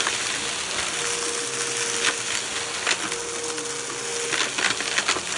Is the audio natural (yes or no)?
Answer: yes